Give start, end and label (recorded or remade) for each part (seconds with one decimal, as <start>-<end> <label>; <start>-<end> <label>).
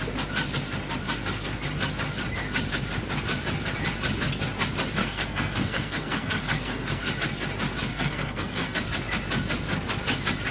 0.0-5.0 recorded; 5.0-7.1 remade; 7.1-7.8 recorded; 7.8-8.8 remade; 8.8-10.5 recorded